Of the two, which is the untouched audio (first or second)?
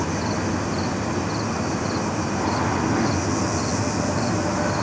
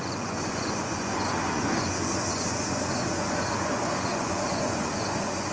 first